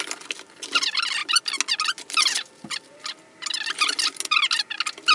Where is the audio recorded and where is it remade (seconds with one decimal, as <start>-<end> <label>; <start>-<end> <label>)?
0.0-5.1 recorded